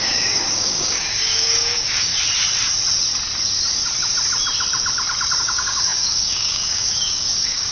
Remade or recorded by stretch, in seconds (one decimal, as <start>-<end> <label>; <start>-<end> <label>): 0.0-2.1 remade; 2.1-5.4 recorded; 5.4-7.7 remade